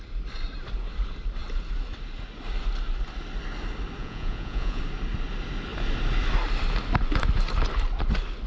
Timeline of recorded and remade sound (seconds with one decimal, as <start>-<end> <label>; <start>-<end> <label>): 0.0-4.0 recorded; 4.0-4.8 remade; 4.8-8.5 recorded

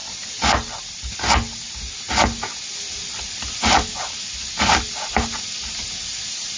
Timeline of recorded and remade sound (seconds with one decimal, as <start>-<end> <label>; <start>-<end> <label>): 0.0-6.6 recorded

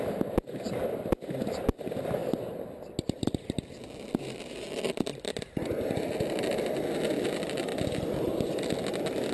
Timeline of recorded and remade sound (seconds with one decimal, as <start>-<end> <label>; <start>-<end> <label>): 0.0-9.3 recorded